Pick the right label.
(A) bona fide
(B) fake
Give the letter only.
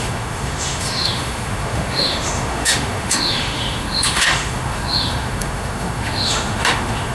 B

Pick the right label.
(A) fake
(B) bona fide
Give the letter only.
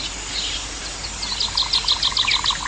B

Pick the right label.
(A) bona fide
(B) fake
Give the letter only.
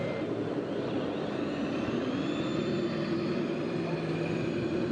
A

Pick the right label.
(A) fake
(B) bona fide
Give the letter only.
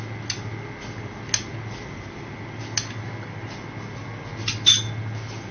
B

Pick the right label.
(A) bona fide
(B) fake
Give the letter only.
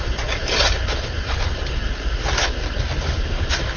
A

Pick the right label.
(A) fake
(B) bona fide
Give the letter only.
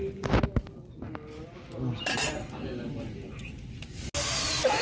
B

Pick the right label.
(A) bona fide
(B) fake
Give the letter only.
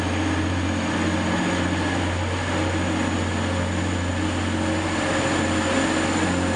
A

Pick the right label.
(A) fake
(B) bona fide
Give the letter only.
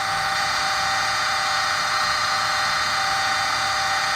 A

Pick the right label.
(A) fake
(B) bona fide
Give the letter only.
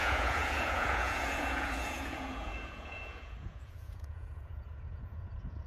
A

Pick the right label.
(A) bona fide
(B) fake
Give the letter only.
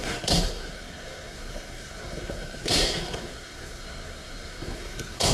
B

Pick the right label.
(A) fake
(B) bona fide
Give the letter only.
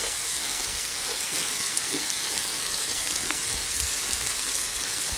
A